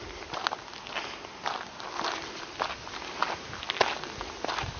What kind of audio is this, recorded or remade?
recorded